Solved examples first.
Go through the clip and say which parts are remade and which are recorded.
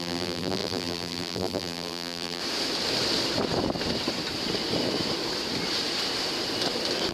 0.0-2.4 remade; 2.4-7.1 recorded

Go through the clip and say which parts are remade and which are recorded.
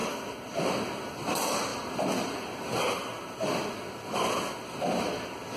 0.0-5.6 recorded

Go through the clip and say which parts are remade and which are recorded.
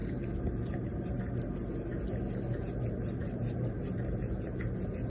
0.0-1.3 remade; 1.3-3.2 recorded; 3.2-5.1 remade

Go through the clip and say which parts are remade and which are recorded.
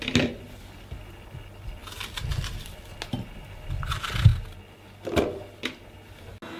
0.0-1.8 recorded; 1.8-3.0 remade; 3.0-6.6 recorded